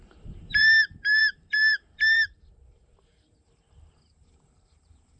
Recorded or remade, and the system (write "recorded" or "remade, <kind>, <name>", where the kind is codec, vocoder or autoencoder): remade, vocoder, BigVGAN v2